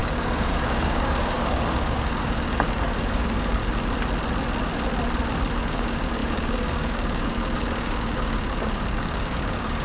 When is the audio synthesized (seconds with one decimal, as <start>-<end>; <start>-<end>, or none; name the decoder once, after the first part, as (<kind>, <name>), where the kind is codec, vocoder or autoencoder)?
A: 0.0-3.6 (codec, DAC); 5.6-9.8